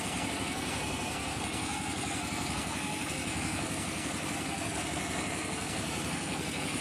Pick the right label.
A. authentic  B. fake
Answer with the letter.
B